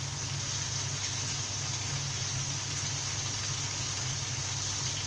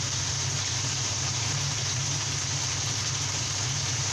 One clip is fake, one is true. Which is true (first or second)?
first